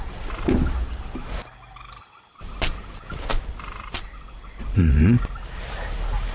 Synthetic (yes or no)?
no